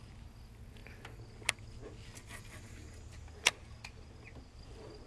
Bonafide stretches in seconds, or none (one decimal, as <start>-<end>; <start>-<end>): 0.0-5.1